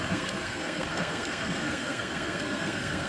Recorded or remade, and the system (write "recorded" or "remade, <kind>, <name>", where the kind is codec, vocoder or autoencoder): remade, codec, SNAC